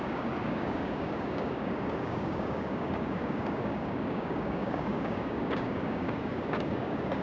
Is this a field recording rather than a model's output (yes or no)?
no